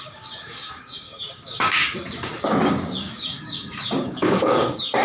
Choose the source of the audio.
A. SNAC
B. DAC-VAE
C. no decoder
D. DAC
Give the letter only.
D